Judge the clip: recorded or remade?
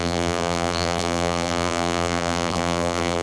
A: remade